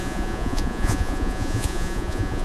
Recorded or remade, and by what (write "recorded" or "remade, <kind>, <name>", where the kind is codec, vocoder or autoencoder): remade, vocoder, Vocos